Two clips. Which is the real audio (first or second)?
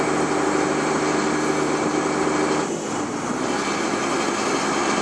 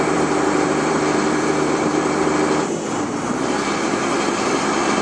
first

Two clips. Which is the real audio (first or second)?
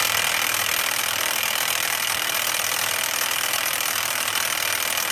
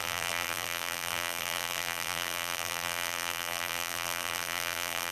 first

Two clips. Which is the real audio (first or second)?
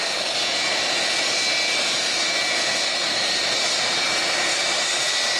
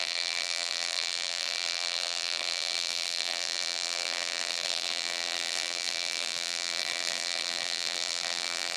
first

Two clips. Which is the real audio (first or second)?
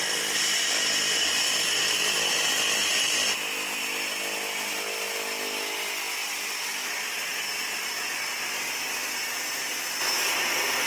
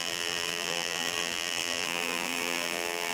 first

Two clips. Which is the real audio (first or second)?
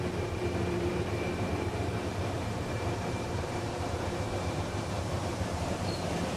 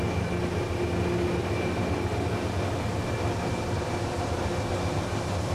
second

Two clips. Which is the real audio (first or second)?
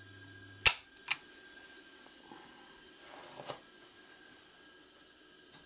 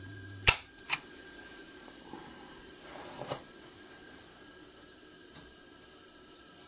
first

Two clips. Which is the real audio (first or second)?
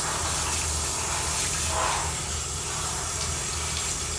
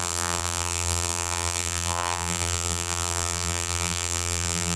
first